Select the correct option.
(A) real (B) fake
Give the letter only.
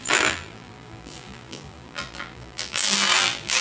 B